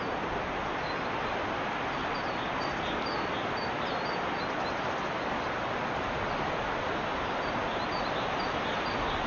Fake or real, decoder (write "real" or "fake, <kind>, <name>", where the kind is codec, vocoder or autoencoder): real